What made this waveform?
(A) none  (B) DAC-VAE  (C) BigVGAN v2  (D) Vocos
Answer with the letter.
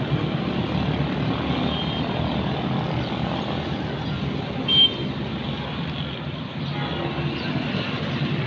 A